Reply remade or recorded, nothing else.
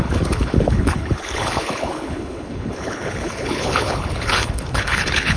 remade